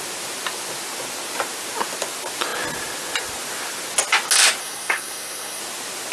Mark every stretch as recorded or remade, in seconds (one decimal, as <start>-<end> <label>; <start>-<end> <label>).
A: 0.0-4.6 recorded; 4.6-5.6 remade; 5.6-6.1 recorded